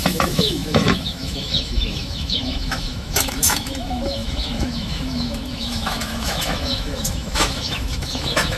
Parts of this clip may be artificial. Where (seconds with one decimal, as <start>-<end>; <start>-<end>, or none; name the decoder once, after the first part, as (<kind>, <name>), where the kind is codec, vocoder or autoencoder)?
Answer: 0.0-8.6 (autoencoder, DAC-VAE)